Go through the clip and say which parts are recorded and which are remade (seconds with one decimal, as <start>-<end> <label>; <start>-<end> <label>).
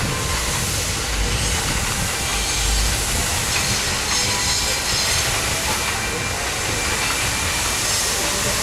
0.0-8.6 recorded